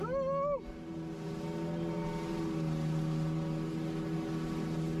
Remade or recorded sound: recorded